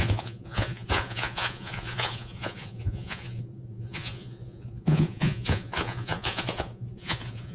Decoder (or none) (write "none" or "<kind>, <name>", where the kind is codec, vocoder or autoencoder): vocoder, Vocos